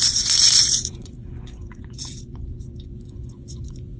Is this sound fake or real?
fake